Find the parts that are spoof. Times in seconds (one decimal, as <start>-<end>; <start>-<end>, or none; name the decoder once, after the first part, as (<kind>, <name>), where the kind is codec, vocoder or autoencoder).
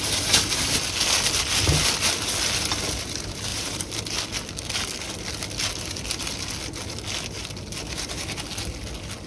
3.5-4.0 (vocoder, BigVGAN v2)